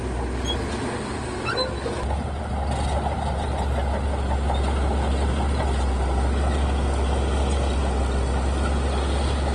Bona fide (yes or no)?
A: yes